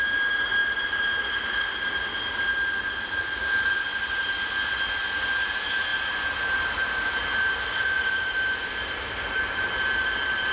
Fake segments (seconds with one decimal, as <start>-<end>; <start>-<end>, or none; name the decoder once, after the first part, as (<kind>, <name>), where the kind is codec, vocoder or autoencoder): 5.9-10.5 (vocoder, BigVGAN v2)